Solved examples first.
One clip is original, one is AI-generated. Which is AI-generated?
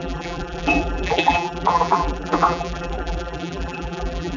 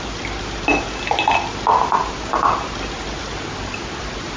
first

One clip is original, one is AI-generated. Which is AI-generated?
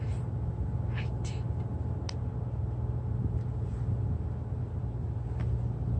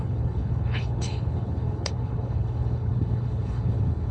second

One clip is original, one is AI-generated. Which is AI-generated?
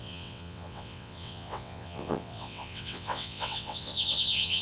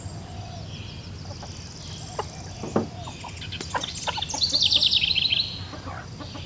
first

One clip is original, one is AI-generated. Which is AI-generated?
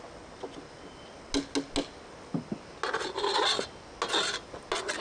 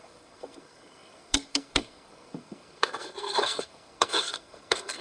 second